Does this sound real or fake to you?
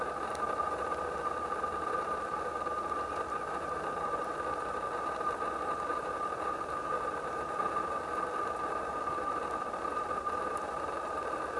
real